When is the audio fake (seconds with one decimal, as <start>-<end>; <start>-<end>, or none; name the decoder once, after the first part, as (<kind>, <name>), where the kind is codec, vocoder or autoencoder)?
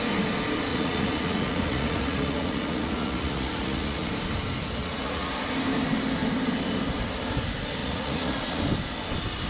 0.7-4.1 (vocoder, Vocos); 4.8-5.3; 7.8-8.6